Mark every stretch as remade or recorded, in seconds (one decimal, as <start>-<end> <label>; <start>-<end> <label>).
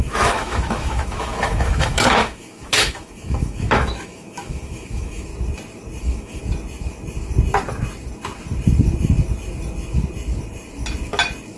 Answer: 0.0-5.3 remade; 5.3-6.0 recorded; 6.0-6.4 remade; 6.4-11.6 recorded